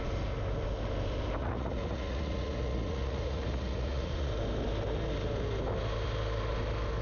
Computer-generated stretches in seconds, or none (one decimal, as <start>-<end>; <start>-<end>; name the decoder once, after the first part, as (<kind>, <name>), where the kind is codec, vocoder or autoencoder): 1.4-4.3 (vocoder, Vocos)